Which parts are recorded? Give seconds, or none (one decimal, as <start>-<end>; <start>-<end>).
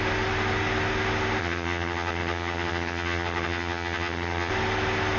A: 0.0-1.4; 4.5-5.2